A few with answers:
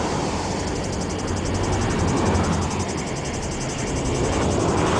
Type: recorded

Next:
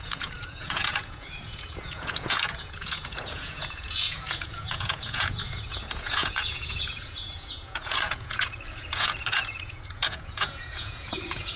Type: remade